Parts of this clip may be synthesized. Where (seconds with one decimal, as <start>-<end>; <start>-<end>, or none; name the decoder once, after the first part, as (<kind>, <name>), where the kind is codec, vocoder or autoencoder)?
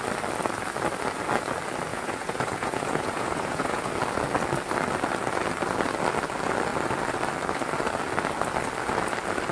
1.9-3.9 (vocoder, Vocos)